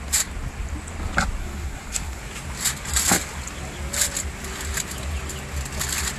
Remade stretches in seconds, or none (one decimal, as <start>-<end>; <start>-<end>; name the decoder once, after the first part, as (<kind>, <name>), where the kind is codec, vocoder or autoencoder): 1.4-2.2 (codec, SNAC)